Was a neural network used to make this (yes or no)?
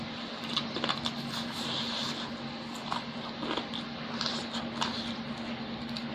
no